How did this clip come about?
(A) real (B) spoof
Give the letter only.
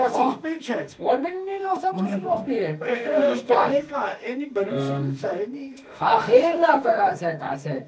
B